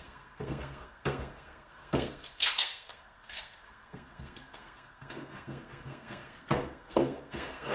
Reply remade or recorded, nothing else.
remade